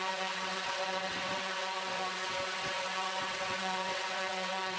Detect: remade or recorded remade